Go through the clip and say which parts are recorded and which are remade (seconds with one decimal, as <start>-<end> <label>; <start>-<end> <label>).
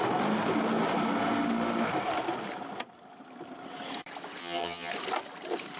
0.0-4.4 recorded; 4.4-4.9 remade; 4.9-5.8 recorded